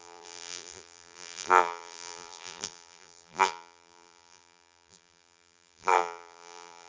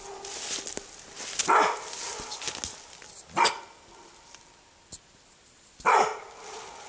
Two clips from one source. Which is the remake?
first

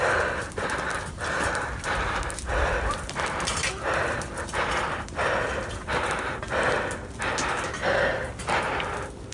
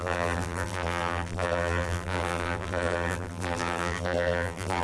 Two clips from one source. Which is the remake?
second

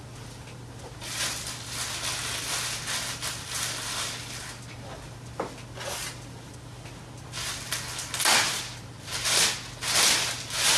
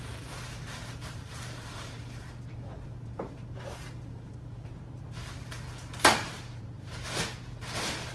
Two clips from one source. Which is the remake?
second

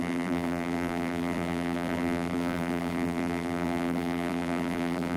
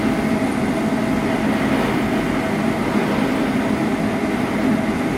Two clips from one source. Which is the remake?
first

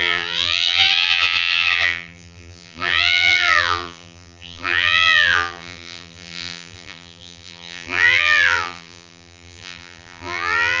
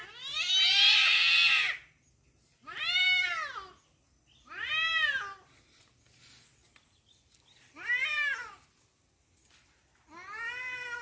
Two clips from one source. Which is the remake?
first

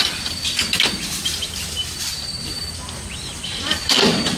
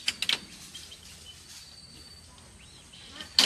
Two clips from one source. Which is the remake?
first